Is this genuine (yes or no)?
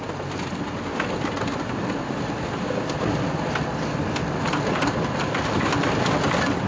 yes